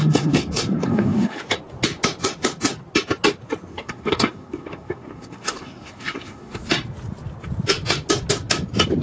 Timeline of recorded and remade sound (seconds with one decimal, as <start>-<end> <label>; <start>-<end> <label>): 0.0-1.4 remade; 1.4-3.7 recorded; 3.7-6.6 remade; 6.6-9.0 recorded

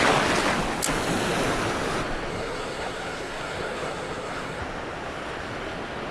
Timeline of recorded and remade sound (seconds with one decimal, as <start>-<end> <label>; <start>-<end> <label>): 0.0-2.3 recorded; 2.3-4.6 remade; 4.6-6.1 recorded

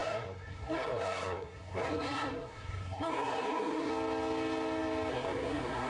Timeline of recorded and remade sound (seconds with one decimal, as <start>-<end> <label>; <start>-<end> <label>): 0.0-3.9 remade; 3.9-5.1 recorded; 5.1-5.9 remade

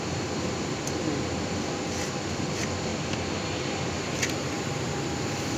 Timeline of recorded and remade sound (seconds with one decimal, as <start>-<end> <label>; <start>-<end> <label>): 0.0-5.6 recorded

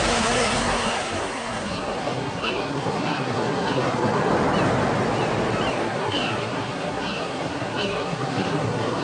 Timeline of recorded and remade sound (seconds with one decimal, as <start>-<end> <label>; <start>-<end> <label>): 0.0-4.3 remade; 4.3-5.7 recorded; 5.7-9.0 remade

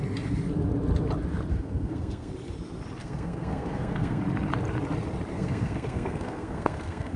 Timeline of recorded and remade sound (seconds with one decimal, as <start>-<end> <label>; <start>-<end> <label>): 0.0-1.5 recorded; 1.5-2.3 remade; 2.3-3.0 recorded; 3.0-4.2 remade; 4.2-5.3 recorded; 5.3-7.2 remade